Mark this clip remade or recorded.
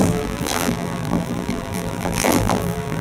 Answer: remade